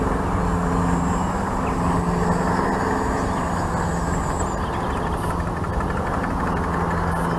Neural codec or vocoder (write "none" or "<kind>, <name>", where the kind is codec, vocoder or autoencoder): none